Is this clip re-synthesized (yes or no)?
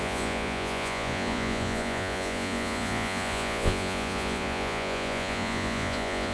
yes